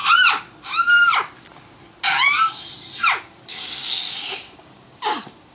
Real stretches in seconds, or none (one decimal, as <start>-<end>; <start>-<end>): 0.0-3.3